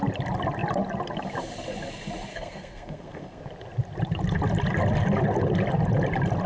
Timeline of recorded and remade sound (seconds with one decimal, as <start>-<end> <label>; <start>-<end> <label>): 0.0-2.3 recorded; 2.3-3.4 remade; 3.4-6.5 recorded